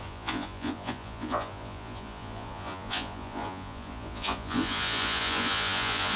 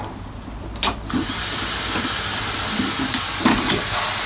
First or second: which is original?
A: second